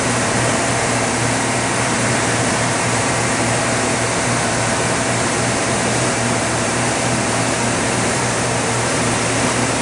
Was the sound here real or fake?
fake